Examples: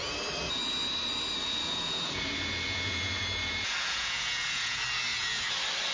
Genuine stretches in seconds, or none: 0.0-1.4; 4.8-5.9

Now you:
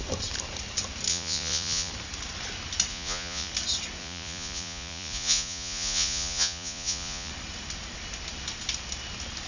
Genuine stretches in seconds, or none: 0.0-1.1; 1.9-2.9; 3.5-4.0; 7.3-9.5

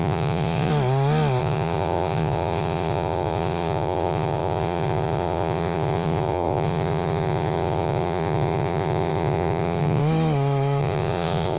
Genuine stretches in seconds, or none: 0.7-1.4; 10.0-10.8